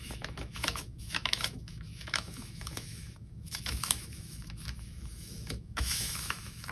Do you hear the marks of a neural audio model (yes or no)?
yes